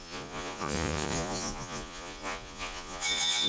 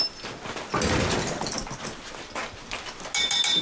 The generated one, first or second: first